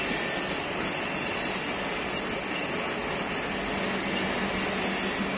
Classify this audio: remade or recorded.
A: recorded